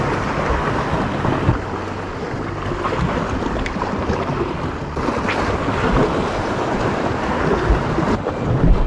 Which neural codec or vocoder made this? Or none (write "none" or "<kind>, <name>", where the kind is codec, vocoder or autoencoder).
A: none